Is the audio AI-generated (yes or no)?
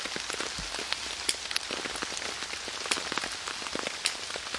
no